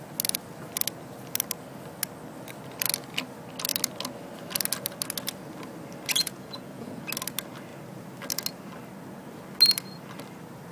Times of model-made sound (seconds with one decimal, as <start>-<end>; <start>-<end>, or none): 6.2-7.0